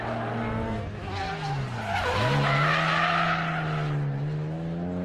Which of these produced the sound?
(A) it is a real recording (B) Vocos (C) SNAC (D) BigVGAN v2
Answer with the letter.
A